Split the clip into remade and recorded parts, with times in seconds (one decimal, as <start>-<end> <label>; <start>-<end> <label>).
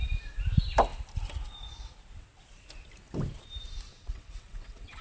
0.0-3.9 recorded; 3.9-5.0 remade